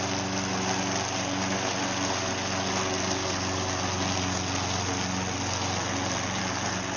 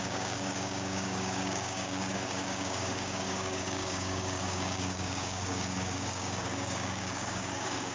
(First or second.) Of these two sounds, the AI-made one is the second